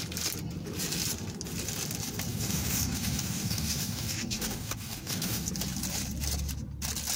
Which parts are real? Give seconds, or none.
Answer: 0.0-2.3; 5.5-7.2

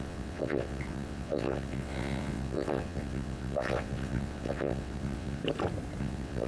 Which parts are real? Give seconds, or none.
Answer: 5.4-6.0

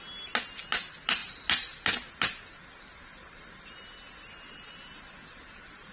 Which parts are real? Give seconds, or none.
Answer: 0.0-5.9

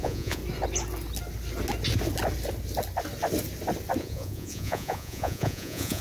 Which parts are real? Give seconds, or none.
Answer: 0.4-4.0

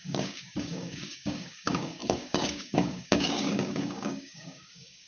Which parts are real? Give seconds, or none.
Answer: none

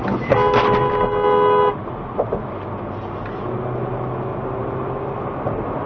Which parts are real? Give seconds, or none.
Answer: 0.0-5.9

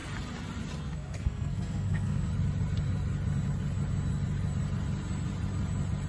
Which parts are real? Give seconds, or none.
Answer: 0.0-0.8; 2.3-6.1

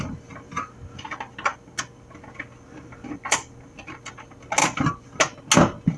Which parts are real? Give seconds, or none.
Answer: 0.0-1.5; 4.1-4.6; 5.2-6.0